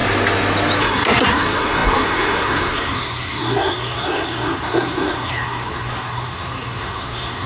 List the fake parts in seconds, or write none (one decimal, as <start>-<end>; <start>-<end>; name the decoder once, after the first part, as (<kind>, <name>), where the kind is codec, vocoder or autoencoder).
0.8-7.5 (codec, SNAC)